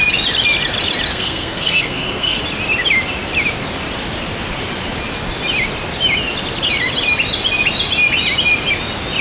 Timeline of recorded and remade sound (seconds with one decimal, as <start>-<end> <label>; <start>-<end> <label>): 0.0-1.1 recorded; 1.1-2.4 remade; 2.4-9.2 recorded